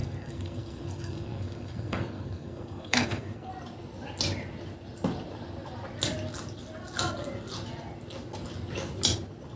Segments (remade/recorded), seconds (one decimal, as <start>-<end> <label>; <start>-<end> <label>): 0.0-3.5 remade; 3.5-9.6 recorded